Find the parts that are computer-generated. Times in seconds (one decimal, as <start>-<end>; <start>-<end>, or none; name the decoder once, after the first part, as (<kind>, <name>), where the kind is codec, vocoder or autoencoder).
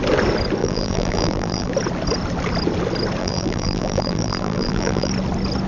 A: 0.6-1.7 (vocoder, BigVGAN v2); 3.2-5.1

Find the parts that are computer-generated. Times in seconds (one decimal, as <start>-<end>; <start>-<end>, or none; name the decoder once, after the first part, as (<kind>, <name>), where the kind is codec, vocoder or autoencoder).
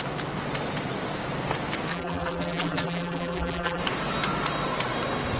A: 1.9-3.8 (vocoder, BigVGAN v2)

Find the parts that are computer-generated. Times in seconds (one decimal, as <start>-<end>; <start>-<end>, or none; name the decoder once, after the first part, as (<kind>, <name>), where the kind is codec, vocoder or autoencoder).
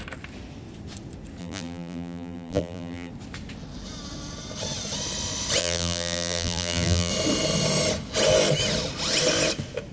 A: 1.4-3.1 (vocoder, BigVGAN v2); 5.6-7.1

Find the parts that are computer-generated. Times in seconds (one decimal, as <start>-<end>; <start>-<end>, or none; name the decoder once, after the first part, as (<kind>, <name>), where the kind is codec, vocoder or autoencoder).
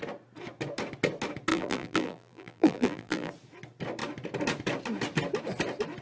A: 1.5-3.3 (vocoder, BigVGAN v2)